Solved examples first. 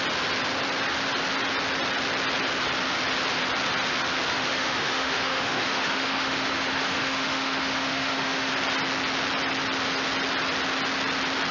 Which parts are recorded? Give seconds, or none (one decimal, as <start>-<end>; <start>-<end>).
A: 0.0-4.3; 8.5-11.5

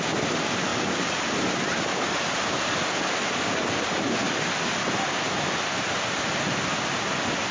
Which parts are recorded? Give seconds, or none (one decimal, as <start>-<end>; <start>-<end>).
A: 0.0-7.5

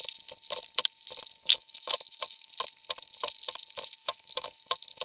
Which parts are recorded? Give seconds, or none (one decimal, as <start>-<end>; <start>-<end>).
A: 0.0-1.4; 2.5-4.0; 4.6-5.0